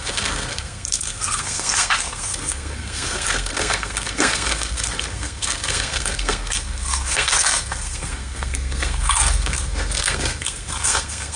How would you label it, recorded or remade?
remade